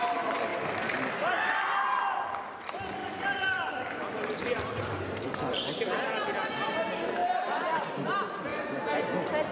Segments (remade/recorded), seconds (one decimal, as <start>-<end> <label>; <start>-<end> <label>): 0.0-0.5 recorded; 0.5-1.3 remade; 1.3-3.0 recorded; 3.0-4.6 remade; 4.6-7.2 recorded; 7.2-7.9 remade; 7.9-9.5 recorded

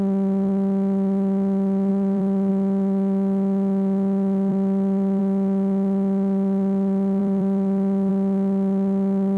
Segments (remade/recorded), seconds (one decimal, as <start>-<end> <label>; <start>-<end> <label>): 0.0-1.9 recorded; 1.9-2.5 remade; 2.5-4.5 recorded; 4.5-5.2 remade; 5.2-7.2 recorded; 7.2-8.1 remade; 8.1-9.4 recorded

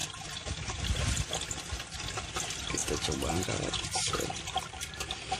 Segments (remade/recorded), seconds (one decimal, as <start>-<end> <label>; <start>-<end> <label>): 0.0-5.4 recorded

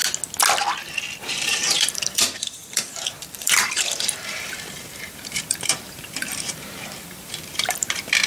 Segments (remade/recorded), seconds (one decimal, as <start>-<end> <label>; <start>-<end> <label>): 0.0-1.2 recorded; 1.2-8.3 remade